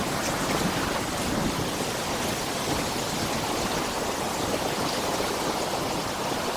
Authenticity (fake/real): real